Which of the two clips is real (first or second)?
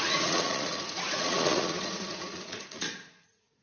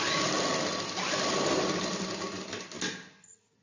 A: second